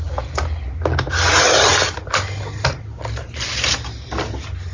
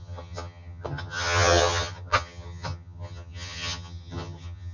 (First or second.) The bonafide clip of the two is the first